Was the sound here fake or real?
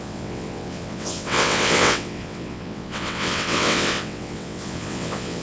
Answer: fake